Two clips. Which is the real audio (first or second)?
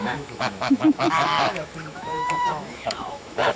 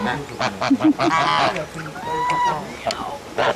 second